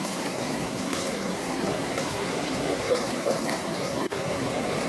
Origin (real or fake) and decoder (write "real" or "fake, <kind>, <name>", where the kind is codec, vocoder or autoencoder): fake, codec, SNAC